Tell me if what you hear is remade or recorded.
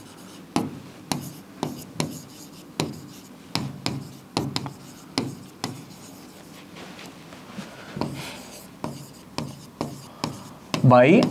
recorded